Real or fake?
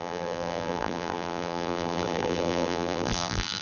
fake